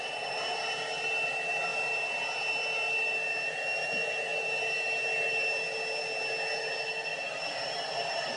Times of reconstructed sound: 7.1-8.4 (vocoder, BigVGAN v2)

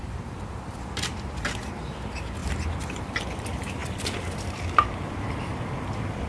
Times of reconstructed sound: 2.4-3.2 (vocoder, BigVGAN v2)

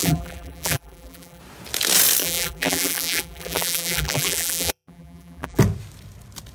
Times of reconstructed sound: 0.0-1.4 (vocoder, BigVGAN v2); 2.2-5.6